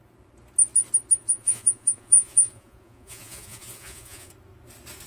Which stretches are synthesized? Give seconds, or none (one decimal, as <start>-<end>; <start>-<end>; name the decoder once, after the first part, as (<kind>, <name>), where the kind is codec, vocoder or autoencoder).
1.2-4.3 (vocoder, Vocos)